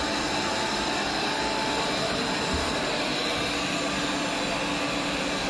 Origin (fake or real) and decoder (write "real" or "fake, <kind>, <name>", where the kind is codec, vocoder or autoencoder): real